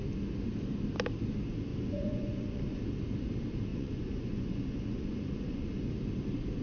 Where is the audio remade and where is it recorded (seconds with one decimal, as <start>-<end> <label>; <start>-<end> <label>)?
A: 0.0-1.7 recorded; 1.7-2.8 remade; 2.8-3.7 recorded; 3.7-5.9 remade; 5.9-6.6 recorded